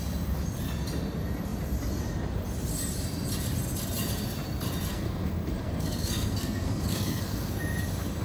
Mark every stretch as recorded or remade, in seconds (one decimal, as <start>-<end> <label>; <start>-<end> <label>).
0.0-4.9 recorded; 4.9-7.6 remade; 7.6-8.2 recorded